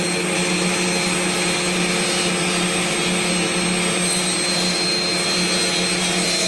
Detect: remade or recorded recorded